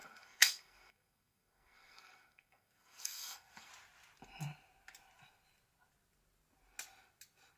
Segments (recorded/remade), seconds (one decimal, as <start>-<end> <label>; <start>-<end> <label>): 0.0-3.7 remade; 3.7-7.6 recorded